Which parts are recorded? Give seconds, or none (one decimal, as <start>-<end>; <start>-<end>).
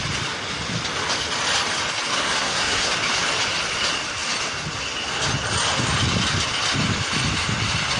0.0-2.1; 2.9-8.0